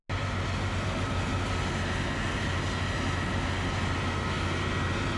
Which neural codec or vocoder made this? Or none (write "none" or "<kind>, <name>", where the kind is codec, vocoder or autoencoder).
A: none